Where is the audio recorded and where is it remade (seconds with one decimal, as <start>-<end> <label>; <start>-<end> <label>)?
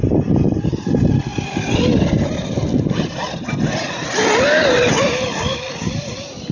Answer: 0.0-6.5 recorded